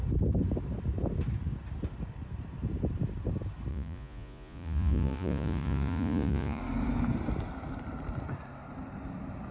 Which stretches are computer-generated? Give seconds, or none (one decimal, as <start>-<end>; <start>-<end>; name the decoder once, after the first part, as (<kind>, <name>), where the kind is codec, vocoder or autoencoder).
3.7-6.6 (vocoder, Vocos)